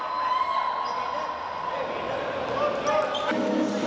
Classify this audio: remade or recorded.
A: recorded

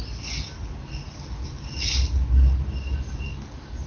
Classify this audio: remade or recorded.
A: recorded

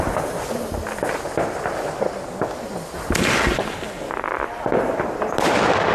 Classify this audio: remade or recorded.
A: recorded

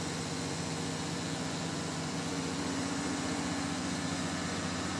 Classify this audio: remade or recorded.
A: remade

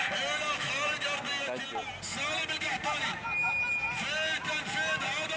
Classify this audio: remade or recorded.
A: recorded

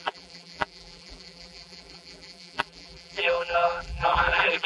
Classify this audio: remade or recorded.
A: remade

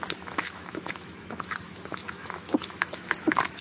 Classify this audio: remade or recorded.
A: remade